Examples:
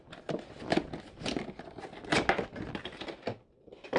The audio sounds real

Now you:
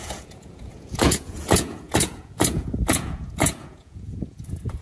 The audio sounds fake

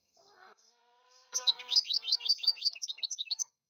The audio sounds fake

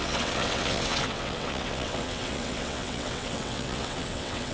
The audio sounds fake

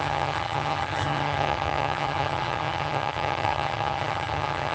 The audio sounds fake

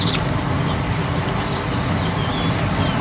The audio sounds real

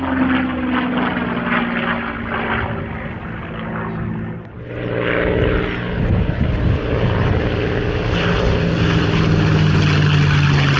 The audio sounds real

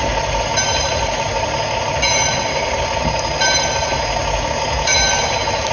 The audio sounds real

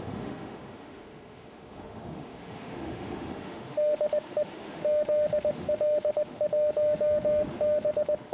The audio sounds fake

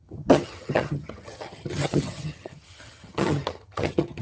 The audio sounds fake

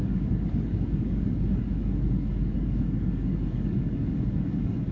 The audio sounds fake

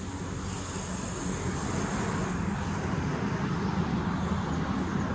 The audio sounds real